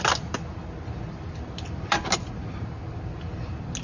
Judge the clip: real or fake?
real